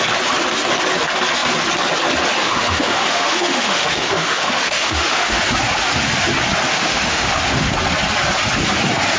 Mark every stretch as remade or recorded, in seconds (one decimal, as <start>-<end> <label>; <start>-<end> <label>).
0.0-2.4 recorded; 2.4-5.4 remade; 5.4-6.7 recorded; 6.7-7.7 remade; 7.7-9.2 recorded